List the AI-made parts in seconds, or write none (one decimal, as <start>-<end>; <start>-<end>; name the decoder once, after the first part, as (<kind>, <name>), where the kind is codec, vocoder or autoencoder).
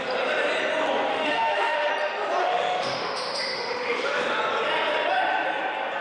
1.1-1.9 (autoencoder, DAC-VAE); 2.4-4.4